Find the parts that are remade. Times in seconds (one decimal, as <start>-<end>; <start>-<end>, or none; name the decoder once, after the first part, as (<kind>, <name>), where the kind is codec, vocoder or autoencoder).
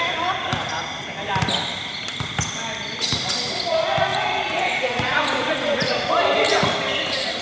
4.1-6.1 (vocoder, Vocos)